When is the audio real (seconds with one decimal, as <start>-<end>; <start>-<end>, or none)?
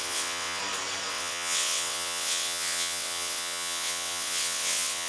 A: 0.6-1.1